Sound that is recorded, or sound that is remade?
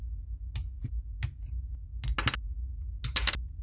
recorded